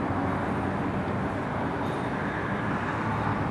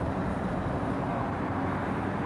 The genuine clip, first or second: first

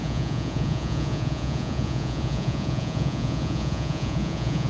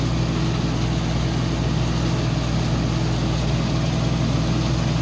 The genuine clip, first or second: second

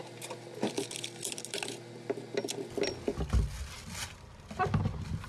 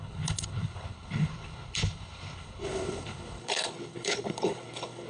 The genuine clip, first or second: first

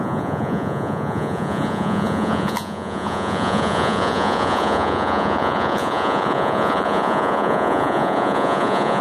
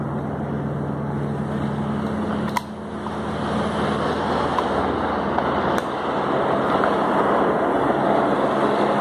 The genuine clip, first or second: second